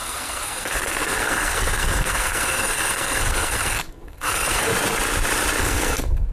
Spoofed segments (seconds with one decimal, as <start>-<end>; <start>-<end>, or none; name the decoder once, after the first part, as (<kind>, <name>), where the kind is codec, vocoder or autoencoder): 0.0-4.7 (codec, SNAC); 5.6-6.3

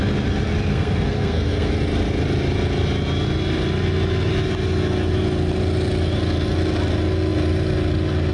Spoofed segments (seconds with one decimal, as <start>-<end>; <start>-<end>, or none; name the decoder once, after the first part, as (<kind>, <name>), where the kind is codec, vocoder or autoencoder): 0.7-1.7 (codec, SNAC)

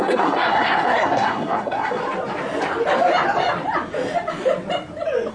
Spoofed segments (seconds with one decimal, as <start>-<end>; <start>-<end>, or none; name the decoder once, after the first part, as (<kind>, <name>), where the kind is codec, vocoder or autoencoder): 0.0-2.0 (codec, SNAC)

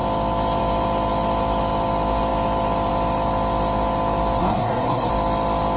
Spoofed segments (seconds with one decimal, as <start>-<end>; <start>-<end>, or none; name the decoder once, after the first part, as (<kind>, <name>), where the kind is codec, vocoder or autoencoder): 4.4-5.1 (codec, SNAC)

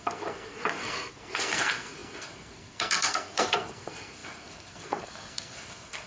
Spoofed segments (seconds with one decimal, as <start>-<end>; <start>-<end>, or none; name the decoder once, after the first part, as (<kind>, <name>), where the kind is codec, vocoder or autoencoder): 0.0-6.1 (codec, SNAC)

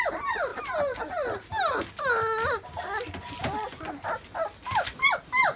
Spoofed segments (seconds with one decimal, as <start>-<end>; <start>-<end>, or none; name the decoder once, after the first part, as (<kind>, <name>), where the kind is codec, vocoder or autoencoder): none

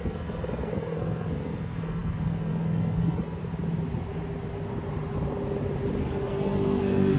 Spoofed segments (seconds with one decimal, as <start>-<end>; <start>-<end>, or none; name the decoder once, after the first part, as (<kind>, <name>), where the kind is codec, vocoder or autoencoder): 0.0-3.4 (codec, SNAC); 6.0-7.2